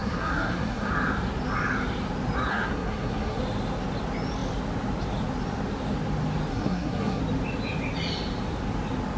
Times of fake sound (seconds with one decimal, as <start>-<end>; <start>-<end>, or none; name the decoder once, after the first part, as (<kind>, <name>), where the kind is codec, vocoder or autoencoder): 0.0-0.9 (codec, SNAC); 2.5-3.4; 6.5-7.2